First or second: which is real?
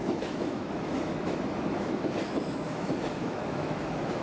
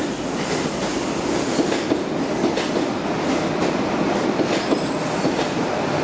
second